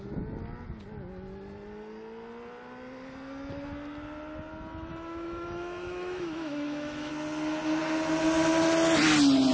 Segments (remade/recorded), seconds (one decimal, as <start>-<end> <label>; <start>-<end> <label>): 0.0-4.9 recorded; 4.9-7.1 remade; 7.1-9.5 recorded